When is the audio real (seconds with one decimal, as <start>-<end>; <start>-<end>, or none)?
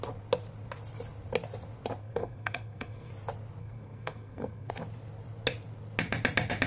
0.0-2.0; 3.1-3.6; 4.7-6.7